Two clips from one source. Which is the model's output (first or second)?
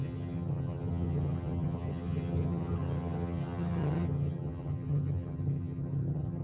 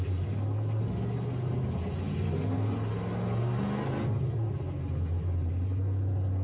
first